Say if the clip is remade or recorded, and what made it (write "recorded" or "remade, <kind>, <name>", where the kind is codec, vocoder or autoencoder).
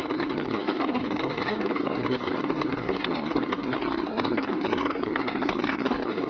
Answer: remade, codec, SNAC